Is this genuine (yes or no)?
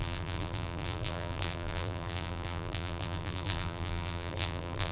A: no